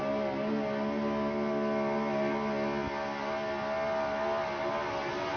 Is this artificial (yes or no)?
no